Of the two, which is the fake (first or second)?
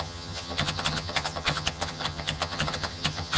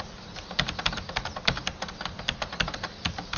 first